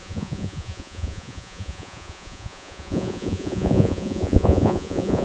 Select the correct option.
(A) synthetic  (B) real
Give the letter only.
A